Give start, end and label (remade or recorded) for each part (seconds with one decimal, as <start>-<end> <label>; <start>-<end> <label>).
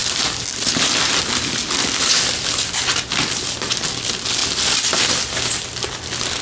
0.0-6.4 recorded